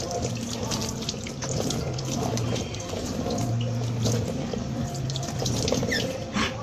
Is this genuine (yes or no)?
yes